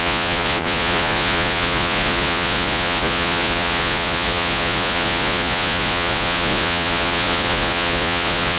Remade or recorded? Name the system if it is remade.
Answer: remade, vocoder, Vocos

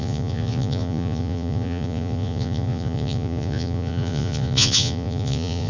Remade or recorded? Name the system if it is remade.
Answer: remade, vocoder, Vocos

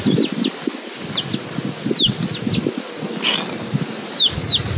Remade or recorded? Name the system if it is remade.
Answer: recorded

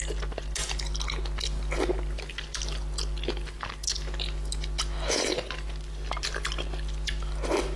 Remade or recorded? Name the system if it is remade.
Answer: recorded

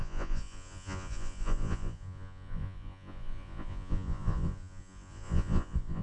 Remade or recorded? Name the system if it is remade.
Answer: remade, vocoder, Vocos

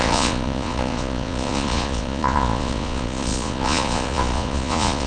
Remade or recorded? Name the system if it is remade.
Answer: remade, vocoder, Vocos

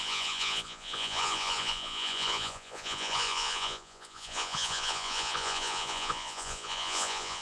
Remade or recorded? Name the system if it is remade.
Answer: remade, vocoder, Vocos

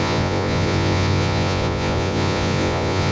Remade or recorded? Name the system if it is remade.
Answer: remade, vocoder, Vocos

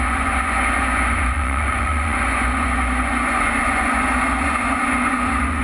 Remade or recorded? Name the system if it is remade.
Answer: remade, vocoder, Vocos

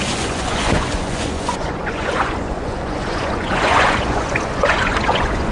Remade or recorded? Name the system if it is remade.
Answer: remade, vocoder, Vocos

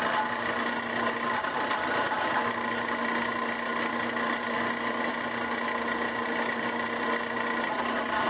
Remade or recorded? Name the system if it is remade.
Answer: recorded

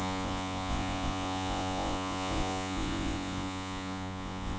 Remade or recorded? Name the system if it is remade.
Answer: remade, vocoder, Vocos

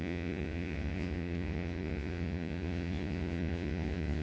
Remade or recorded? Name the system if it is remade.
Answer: remade, vocoder, Vocos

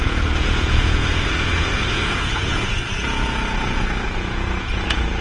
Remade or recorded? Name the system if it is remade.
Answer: remade, vocoder, Vocos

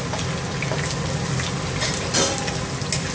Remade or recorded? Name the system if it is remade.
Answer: recorded